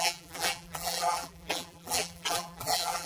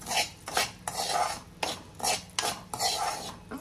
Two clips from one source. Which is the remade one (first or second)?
first